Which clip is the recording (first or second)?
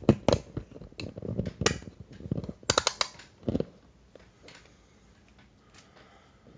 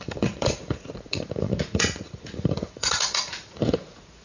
first